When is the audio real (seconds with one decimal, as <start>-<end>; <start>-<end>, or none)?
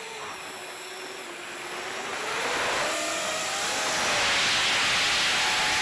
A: 0.0-5.8